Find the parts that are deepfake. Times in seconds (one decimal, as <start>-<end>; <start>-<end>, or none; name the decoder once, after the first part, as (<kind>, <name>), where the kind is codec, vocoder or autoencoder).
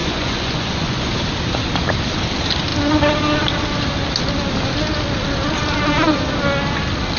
0.0-1.1 (vocoder, Vocos)